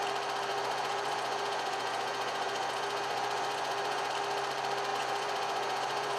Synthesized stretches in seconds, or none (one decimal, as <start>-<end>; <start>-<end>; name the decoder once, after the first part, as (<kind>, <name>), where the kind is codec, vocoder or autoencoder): 0.5-4.1 (vocoder, Vocos); 4.9-6.2

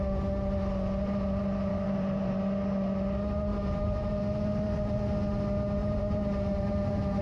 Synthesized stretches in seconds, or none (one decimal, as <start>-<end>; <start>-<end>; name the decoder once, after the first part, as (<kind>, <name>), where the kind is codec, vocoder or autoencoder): 1.7-2.3 (vocoder, BigVGAN v2); 3.5-4.2; 5.8-7.2

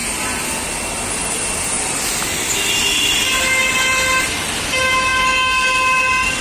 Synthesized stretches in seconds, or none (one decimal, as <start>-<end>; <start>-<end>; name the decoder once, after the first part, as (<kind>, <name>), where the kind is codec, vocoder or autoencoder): none

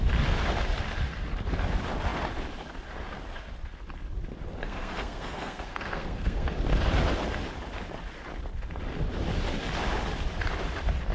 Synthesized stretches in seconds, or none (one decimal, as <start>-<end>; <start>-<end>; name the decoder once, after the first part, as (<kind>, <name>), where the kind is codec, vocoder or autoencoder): 4.6-6.6 (codec, SNAC)

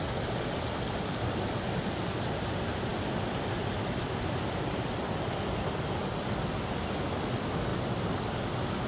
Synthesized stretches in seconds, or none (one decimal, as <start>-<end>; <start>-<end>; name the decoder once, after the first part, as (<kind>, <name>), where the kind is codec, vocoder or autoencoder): none

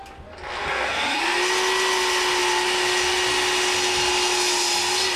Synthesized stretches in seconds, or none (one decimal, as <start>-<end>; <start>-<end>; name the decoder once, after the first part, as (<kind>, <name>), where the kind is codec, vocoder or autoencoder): 0.6-1.2 (codec, SNAC)

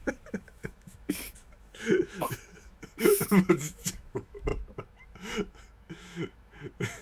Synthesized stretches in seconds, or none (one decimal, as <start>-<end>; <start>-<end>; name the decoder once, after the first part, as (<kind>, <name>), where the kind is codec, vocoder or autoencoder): 0.0-7.0 (autoencoder, DAC-VAE)

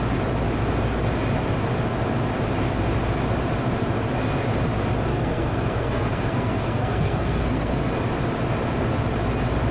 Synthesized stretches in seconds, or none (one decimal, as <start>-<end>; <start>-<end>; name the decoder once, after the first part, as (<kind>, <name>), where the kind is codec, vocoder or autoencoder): 5.1-7.9 (codec, SNAC)